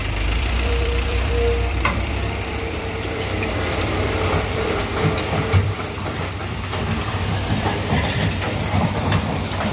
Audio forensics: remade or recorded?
remade